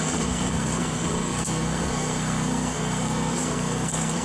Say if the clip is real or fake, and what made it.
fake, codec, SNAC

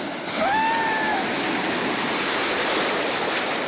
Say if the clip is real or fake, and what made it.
real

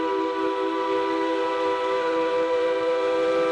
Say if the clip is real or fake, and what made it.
real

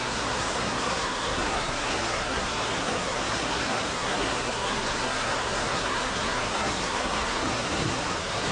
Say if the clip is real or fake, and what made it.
fake, codec, SNAC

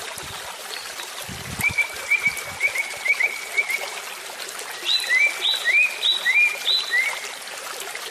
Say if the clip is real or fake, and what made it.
real